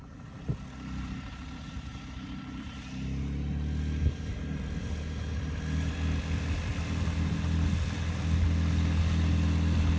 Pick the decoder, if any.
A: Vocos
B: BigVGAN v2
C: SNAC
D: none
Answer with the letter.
D